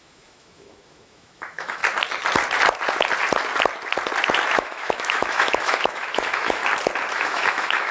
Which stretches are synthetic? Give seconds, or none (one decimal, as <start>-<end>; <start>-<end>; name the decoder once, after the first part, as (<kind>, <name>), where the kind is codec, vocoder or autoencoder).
0.0-1.8 (autoencoder, DAC-VAE); 4.5-6.6; 7.1-7.9